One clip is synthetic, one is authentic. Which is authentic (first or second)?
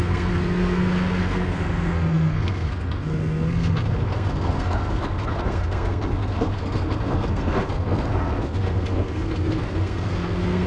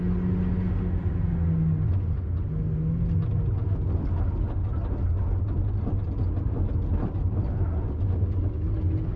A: second